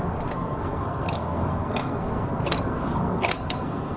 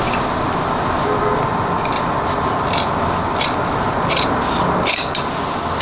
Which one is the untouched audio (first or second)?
second